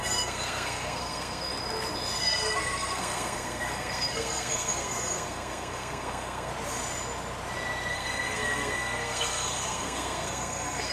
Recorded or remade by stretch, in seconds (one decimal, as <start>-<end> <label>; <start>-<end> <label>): 0.0-1.5 remade; 1.5-2.2 recorded; 2.2-6.5 remade; 6.5-7.9 recorded; 7.9-10.9 remade